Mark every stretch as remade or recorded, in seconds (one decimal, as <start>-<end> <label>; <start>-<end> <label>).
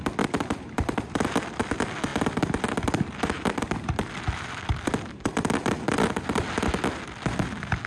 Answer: 0.0-7.9 recorded